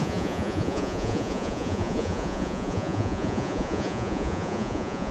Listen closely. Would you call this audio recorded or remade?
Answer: remade